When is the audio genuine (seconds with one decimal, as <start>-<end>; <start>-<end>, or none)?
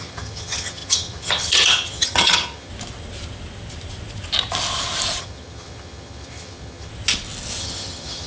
2.7-5.2; 6.9-7.6